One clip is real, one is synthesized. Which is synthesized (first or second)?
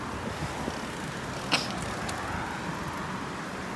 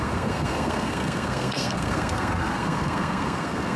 second